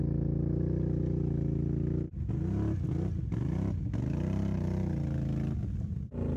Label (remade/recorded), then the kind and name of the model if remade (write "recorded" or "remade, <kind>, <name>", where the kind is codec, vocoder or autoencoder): recorded